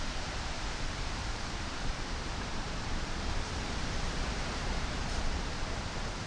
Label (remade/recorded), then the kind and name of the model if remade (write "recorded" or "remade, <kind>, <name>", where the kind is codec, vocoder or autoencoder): remade, vocoder, BigVGAN v2